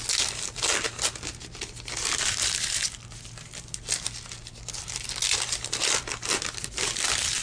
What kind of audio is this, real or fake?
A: real